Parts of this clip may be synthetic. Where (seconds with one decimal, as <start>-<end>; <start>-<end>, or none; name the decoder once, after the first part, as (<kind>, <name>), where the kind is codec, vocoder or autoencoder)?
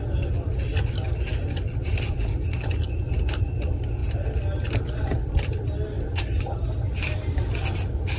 none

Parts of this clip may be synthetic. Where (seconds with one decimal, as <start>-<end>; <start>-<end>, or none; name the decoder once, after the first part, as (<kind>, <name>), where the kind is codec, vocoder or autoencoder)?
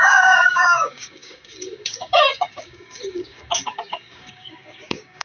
0.0-5.2 (codec, DAC)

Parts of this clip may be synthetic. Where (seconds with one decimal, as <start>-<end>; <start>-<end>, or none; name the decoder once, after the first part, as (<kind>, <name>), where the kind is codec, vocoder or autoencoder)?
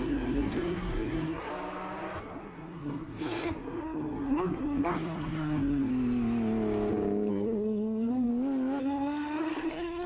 0.0-1.5 (codec, SNAC); 2.2-5.9; 7.3-8.3; 8.8-10.1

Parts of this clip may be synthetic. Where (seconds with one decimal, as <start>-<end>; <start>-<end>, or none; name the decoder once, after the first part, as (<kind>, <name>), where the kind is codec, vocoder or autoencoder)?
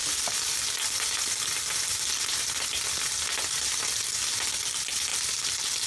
none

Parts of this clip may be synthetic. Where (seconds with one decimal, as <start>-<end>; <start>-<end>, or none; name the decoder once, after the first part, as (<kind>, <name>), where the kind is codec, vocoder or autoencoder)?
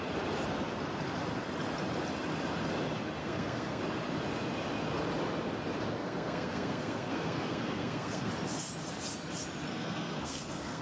3.2-3.8 (codec, SNAC); 6.0-8.3; 9.7-10.8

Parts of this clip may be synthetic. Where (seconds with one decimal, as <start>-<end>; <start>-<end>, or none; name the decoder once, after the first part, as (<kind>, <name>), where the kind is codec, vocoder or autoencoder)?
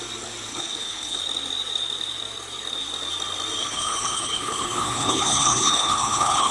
0.5-1.2 (codec, HILCodec); 3.6-6.5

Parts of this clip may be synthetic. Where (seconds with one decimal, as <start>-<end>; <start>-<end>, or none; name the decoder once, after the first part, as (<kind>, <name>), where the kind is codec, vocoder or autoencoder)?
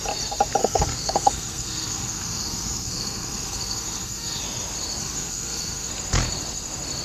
0.6-4.4 (codec, SNAC); 5.0-5.9